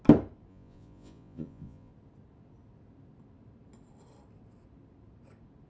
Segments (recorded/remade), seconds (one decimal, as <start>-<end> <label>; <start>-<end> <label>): 0.0-0.5 recorded; 0.5-1.9 remade; 1.9-5.7 recorded